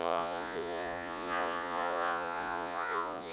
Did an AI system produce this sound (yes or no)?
yes